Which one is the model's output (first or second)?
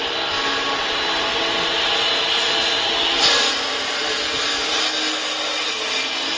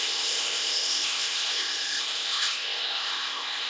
second